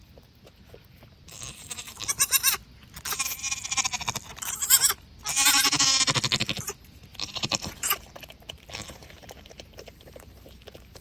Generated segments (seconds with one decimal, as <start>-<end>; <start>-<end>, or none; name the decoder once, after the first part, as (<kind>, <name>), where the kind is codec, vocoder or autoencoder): 0.0-2.6 (vocoder, BigVGAN v2); 6.4-11.0